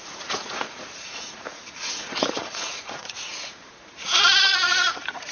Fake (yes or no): yes